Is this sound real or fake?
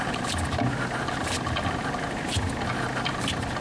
real